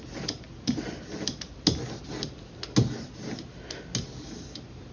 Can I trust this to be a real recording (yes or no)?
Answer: yes